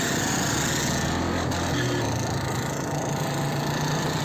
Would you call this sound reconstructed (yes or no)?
no